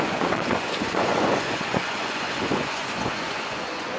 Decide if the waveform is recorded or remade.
remade